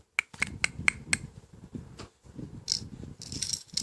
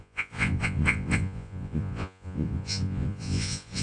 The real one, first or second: first